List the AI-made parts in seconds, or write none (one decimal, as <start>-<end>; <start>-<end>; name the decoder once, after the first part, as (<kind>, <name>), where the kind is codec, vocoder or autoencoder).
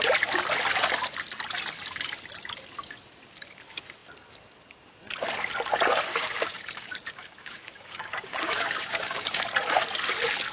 6.1-9.4 (codec, DAC)